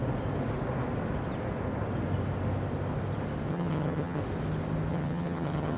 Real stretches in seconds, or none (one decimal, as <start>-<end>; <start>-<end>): 0.0-3.5; 4.2-4.9